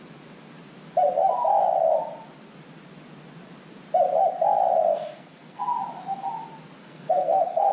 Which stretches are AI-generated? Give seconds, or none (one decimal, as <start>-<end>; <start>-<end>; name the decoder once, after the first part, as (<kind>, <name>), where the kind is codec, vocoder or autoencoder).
4.9-5.6 (codec, SNAC); 6.8-7.7